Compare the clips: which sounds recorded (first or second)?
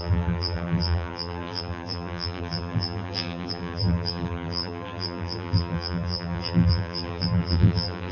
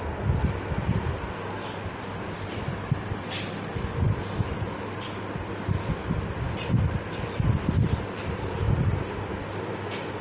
second